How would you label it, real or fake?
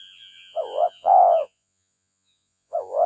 fake